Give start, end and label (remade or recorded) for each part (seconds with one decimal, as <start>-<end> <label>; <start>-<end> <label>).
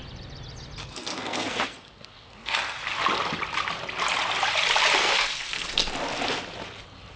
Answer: 0.0-0.8 recorded; 0.8-2.8 remade; 2.8-5.0 recorded; 5.0-5.9 remade; 5.9-7.2 recorded